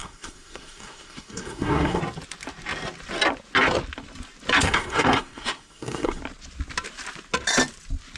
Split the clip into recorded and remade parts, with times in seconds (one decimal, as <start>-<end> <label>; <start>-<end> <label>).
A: 0.0-2.0 remade; 2.0-4.6 recorded; 4.6-6.2 remade; 6.2-8.2 recorded